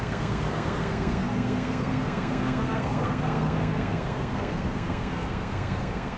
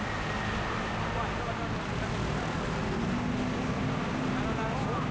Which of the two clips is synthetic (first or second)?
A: first